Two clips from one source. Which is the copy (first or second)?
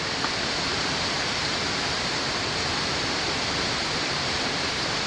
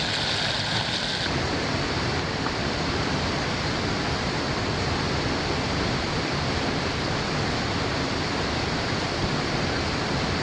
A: first